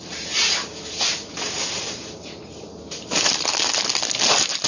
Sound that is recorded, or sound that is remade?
recorded